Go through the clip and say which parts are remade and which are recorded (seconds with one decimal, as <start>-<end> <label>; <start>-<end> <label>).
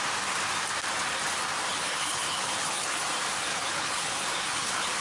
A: 0.0-1.7 recorded; 1.7-3.0 remade; 3.0-3.5 recorded; 3.5-5.0 remade